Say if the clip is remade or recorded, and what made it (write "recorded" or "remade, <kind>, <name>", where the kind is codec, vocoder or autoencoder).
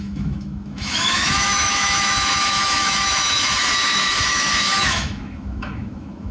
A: remade, autoencoder, DAC-VAE